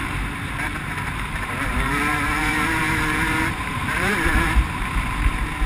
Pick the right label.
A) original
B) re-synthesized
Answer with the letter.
B